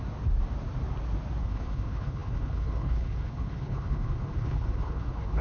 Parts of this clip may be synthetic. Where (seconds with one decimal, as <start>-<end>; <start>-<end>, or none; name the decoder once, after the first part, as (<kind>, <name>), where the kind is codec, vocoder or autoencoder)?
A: 1.4-5.4 (codec, HILCodec)